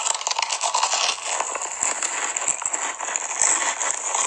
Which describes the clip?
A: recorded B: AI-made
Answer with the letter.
A